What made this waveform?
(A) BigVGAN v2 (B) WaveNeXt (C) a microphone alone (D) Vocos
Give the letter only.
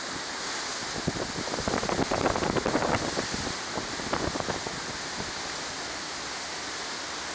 C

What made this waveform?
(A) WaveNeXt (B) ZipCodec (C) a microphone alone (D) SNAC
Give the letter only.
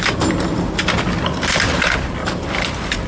C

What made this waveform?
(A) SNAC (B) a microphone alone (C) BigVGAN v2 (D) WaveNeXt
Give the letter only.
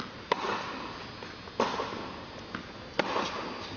B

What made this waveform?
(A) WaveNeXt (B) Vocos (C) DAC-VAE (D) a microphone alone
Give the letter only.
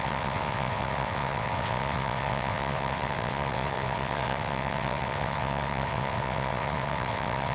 A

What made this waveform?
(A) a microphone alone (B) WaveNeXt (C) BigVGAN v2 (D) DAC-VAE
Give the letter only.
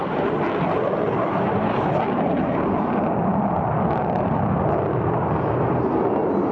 A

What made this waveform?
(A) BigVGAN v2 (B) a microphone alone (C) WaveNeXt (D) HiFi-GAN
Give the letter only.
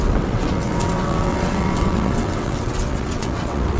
C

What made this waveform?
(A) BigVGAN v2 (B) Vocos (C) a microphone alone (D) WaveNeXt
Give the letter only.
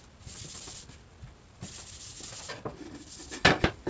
C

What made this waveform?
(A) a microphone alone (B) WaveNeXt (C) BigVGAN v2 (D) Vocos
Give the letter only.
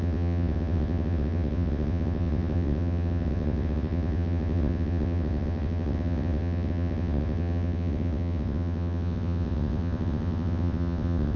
B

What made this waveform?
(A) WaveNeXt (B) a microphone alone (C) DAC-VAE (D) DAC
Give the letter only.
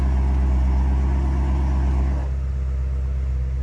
B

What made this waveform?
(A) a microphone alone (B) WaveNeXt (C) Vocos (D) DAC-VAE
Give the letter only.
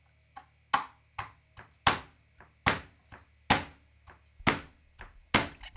A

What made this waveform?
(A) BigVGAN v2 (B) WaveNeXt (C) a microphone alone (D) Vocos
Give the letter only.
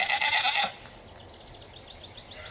C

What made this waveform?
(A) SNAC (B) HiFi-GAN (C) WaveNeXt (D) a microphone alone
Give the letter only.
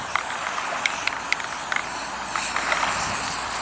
D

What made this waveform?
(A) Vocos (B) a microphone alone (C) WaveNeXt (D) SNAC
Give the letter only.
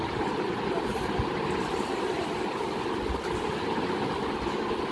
B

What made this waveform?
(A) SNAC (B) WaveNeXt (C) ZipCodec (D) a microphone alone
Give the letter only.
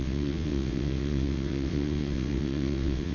B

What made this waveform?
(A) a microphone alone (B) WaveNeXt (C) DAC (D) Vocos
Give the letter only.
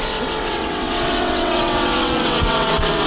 B